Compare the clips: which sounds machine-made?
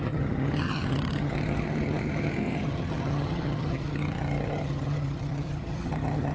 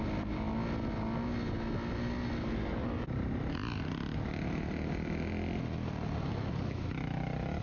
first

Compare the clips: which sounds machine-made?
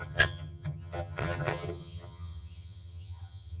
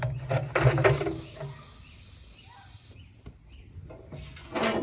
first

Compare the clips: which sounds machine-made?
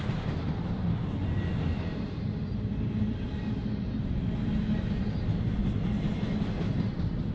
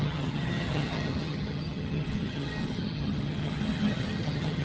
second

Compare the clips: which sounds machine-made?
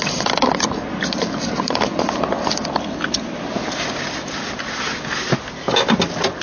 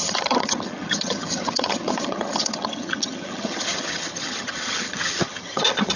second